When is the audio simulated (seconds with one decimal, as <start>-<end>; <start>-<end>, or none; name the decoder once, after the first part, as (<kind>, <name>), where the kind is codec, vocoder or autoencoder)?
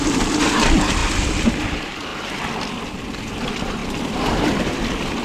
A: 0.0-2.1 (vocoder, BigVGAN v2); 2.8-3.8